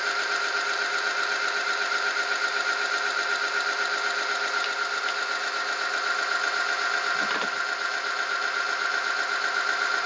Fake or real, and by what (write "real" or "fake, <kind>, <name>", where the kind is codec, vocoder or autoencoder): real